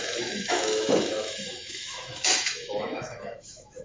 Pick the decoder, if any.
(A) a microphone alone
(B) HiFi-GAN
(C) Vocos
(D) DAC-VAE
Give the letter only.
D